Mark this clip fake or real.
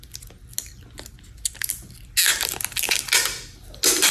real